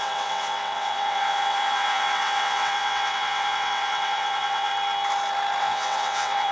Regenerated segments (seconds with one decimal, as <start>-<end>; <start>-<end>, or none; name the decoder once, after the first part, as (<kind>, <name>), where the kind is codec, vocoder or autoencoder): 0.0-4.7 (vocoder, WaveNeXt); 5.6-6.5

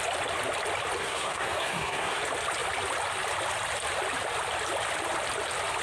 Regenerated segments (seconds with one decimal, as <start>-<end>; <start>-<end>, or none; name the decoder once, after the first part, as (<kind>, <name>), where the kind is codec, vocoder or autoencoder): 1.0-2.2 (codec, SNAC)